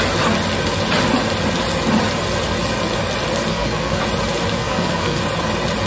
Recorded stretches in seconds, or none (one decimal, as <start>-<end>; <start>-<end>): 0.0-3.5; 4.0-4.6; 5.2-5.9